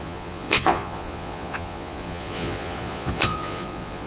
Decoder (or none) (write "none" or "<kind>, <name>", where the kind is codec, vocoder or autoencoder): vocoder, Vocos